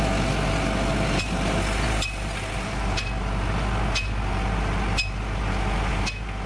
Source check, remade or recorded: recorded